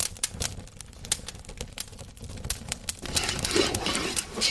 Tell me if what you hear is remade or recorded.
recorded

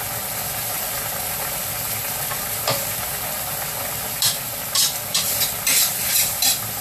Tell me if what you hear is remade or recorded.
remade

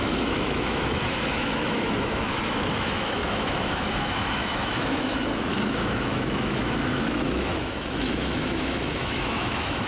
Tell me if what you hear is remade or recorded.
remade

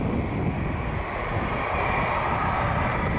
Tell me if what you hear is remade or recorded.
recorded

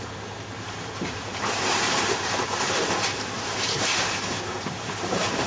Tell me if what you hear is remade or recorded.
remade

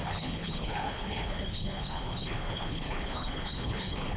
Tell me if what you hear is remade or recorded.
remade